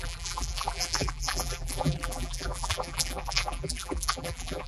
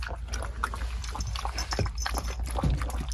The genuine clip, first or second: second